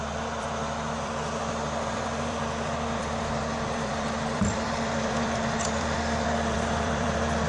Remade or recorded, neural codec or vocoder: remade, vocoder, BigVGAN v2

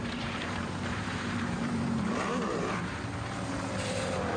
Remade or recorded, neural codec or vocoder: remade, vocoder, BigVGAN v2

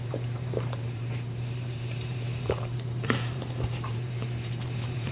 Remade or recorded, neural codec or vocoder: remade, vocoder, BigVGAN v2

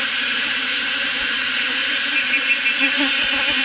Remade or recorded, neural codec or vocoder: remade, vocoder, BigVGAN v2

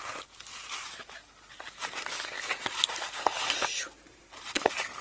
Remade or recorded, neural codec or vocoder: recorded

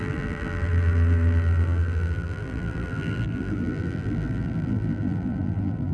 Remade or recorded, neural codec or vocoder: remade, vocoder, BigVGAN v2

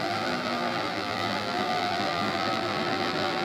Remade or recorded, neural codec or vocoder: remade, vocoder, BigVGAN v2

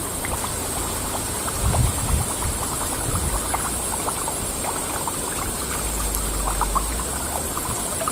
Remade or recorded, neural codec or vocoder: recorded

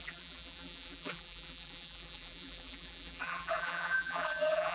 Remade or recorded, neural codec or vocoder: remade, vocoder, BigVGAN v2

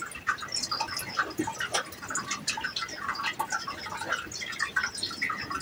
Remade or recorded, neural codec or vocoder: recorded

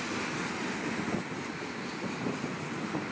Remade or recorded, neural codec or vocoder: recorded